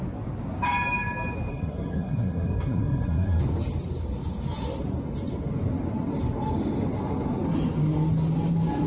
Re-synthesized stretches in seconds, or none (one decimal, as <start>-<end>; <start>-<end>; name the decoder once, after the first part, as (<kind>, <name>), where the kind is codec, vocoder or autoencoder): 1.5-3.4 (codec, SNAC)